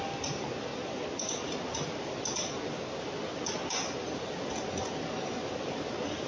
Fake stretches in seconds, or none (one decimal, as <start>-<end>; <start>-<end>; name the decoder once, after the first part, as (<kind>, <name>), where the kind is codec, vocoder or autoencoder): none